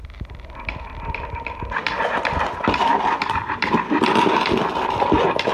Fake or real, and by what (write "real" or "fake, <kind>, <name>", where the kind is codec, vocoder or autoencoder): fake, vocoder, BigVGAN v2